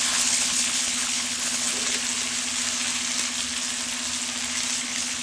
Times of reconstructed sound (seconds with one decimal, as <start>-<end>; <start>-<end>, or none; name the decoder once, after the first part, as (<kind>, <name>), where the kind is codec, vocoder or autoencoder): 0.0-1.7 (codec, HILCodec); 4.8-5.2